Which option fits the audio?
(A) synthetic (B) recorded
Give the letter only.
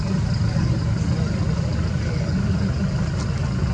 B